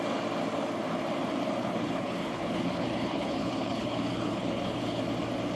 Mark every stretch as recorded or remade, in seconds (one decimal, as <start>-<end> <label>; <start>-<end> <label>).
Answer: 0.0-1.6 recorded; 1.6-5.0 remade; 5.0-5.6 recorded